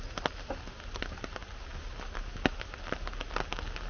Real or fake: real